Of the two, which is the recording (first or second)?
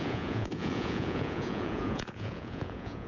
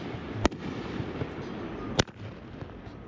second